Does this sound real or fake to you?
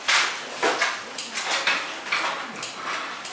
real